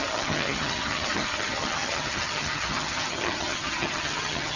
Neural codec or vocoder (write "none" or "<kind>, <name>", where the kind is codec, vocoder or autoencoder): vocoder, HiFi-GAN